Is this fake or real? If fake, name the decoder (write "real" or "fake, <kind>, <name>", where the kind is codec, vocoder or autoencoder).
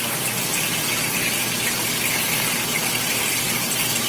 real